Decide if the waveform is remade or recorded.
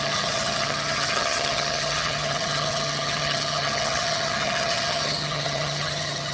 remade